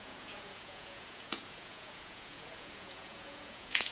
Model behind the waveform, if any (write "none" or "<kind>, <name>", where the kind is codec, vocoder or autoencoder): vocoder, Vocos